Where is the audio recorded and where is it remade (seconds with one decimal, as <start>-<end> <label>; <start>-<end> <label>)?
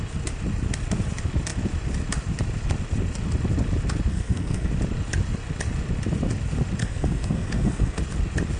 0.0-4.1 recorded; 4.1-4.7 remade; 4.7-6.8 recorded; 6.8-8.0 remade; 8.0-8.6 recorded